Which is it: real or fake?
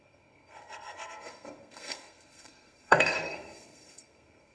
fake